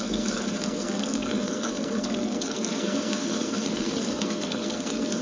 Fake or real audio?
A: fake